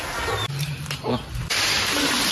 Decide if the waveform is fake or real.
real